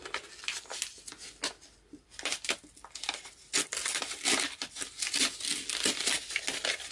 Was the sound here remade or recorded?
recorded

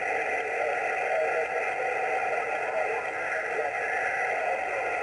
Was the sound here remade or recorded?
recorded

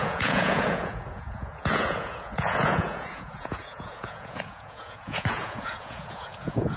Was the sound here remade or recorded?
remade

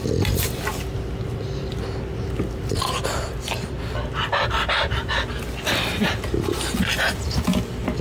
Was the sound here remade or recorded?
recorded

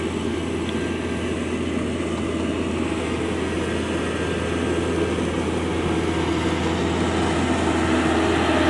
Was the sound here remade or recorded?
recorded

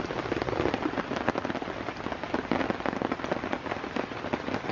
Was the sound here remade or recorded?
recorded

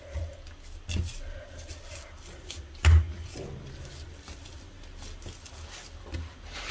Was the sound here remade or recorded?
recorded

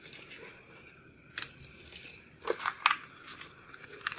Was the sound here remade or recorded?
recorded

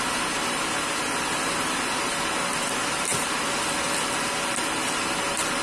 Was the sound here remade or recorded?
recorded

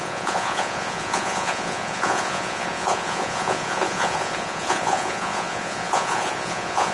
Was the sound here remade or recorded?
remade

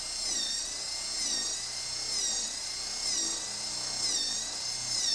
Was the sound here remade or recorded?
recorded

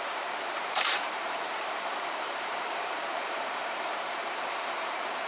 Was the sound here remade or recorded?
remade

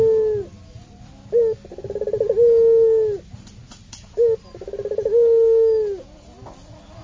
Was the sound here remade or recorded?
recorded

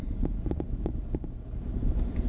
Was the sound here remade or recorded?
recorded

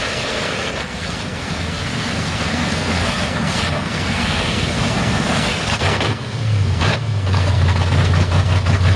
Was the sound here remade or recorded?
remade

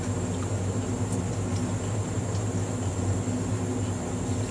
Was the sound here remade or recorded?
recorded